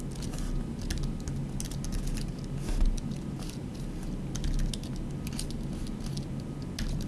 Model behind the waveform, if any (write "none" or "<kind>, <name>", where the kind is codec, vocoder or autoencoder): none